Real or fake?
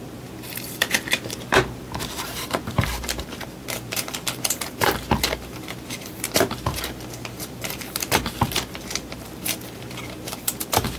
fake